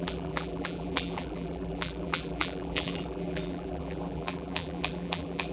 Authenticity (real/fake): fake